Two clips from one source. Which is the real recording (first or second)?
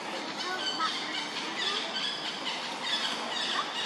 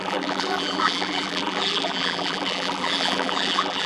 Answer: first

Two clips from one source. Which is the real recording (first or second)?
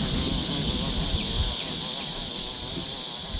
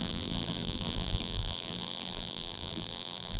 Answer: first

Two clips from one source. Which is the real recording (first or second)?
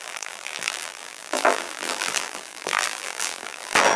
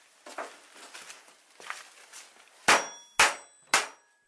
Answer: second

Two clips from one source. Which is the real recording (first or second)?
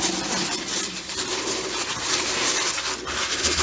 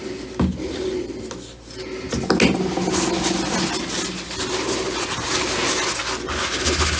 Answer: second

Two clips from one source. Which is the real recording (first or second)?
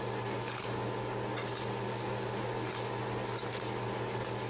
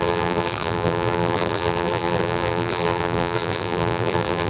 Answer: first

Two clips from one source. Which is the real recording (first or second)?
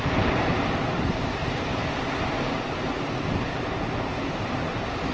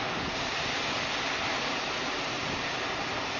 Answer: second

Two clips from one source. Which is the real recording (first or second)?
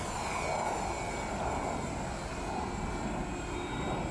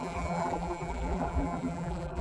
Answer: first